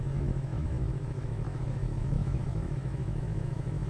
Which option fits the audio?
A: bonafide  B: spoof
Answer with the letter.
B